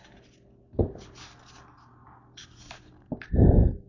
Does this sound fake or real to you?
real